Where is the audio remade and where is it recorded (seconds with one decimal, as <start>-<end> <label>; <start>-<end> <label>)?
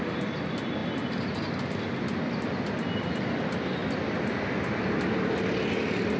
0.0-6.2 recorded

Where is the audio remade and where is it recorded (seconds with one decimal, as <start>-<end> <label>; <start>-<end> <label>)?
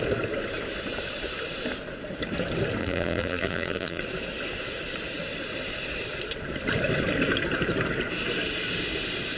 0.0-2.8 recorded; 2.8-4.0 remade; 4.0-9.4 recorded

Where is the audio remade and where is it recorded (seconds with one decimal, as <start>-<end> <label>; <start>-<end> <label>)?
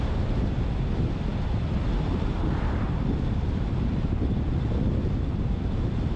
0.0-6.2 recorded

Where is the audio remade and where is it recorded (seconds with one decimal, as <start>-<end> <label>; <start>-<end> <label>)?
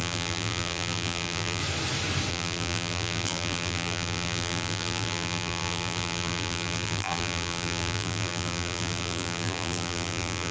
0.0-1.6 remade; 1.6-2.3 recorded; 2.3-10.5 remade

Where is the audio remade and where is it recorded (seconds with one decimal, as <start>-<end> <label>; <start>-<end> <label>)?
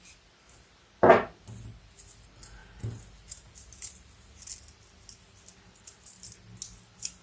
0.0-7.2 recorded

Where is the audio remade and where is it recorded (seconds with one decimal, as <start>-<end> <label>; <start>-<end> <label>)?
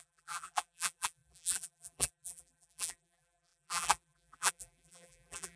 0.0-5.6 remade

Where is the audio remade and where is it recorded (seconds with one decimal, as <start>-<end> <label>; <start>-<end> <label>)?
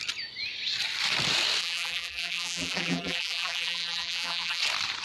0.0-1.6 recorded; 1.6-4.6 remade; 4.6-5.0 recorded